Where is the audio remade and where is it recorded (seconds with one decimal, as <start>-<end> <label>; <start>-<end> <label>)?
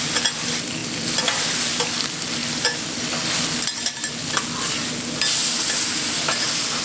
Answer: 0.0-6.8 recorded